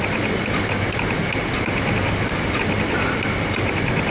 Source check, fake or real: real